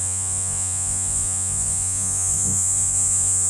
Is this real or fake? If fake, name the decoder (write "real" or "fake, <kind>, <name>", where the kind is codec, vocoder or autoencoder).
fake, vocoder, Vocos